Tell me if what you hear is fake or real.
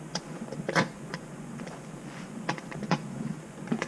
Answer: fake